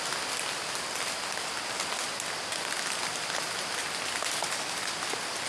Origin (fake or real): real